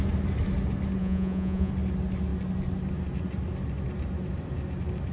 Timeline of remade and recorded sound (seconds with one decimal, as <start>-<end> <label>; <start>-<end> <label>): 0.0-1.0 recorded; 1.0-1.7 remade; 1.7-5.1 recorded